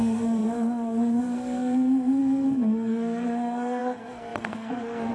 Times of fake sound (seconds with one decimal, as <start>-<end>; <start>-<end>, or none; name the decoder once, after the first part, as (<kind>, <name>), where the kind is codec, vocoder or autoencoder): 0.0-5.1 (codec, SNAC)